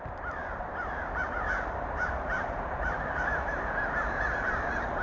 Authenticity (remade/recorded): remade